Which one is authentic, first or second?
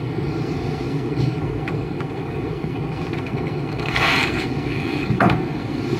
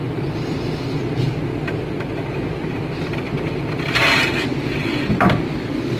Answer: second